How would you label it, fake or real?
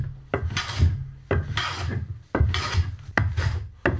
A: real